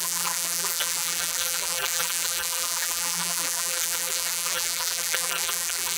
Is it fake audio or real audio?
fake